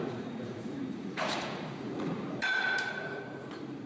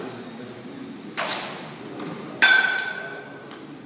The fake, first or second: first